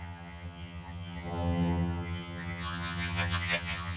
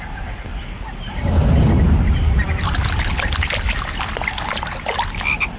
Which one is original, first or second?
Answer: second